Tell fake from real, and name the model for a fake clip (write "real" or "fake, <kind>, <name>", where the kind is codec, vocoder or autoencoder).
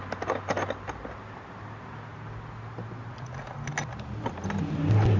real